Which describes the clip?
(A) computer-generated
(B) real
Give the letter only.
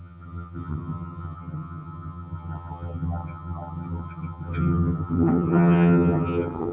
A